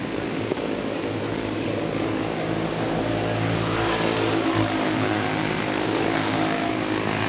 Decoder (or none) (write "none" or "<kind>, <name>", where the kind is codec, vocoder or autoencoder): codec, DAC